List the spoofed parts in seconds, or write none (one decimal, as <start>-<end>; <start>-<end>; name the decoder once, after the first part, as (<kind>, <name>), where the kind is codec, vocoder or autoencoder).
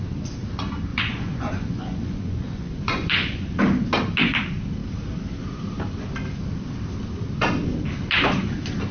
0.9-3.6 (vocoder, Vocos)